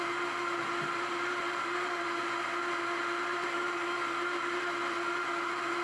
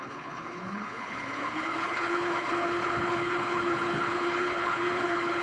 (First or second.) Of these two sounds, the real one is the first